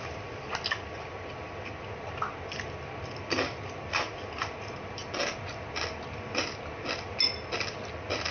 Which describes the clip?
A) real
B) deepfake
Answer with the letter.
A